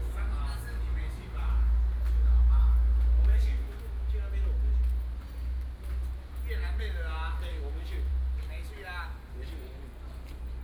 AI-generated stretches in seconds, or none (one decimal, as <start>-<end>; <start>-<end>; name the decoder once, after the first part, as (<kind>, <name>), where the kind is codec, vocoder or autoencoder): 3.3-4.1 (autoencoder, DAC-VAE); 7.5-8.1

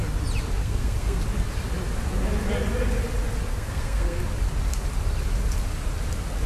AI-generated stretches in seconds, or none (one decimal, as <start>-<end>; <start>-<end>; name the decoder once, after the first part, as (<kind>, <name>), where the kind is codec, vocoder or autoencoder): 0.6-1.2 (codec, SNAC); 3.5-4.2

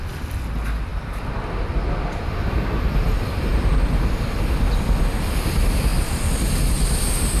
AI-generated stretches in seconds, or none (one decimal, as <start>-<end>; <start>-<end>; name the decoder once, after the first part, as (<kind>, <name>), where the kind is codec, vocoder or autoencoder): none

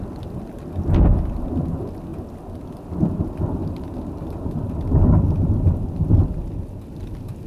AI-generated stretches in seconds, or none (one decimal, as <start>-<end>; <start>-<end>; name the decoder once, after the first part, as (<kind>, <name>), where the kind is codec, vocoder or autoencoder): none

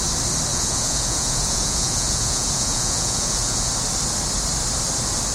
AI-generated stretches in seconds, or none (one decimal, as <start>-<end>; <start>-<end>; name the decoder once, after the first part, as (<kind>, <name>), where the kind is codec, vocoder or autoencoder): 0.5-3.7 (vocoder, Vocos)